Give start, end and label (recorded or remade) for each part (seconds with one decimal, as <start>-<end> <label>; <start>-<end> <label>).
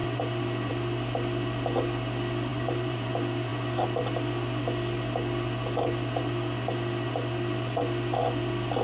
0.0-2.5 recorded; 2.5-3.1 remade; 3.1-8.8 recorded